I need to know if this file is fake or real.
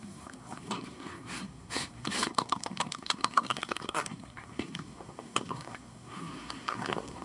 fake